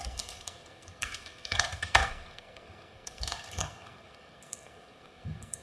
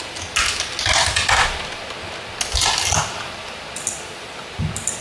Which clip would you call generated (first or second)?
first